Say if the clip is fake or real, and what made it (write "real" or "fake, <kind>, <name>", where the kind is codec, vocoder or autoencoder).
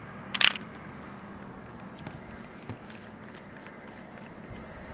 real